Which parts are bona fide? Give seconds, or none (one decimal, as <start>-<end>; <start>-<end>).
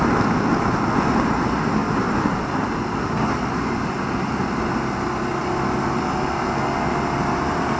0.0-7.8